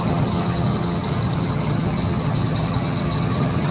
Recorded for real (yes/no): no